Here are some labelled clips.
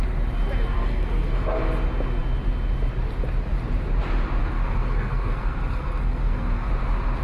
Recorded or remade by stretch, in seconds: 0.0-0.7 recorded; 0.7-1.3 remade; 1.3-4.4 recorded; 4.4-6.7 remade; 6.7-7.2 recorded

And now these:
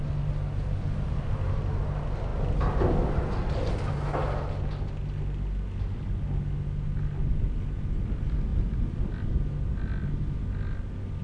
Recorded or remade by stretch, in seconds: 0.0-11.2 recorded